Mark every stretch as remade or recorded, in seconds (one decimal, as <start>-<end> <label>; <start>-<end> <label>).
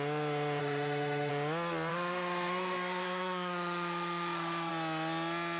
0.0-0.6 recorded; 0.6-1.3 remade; 1.3-1.9 recorded; 1.9-4.7 remade; 4.7-5.6 recorded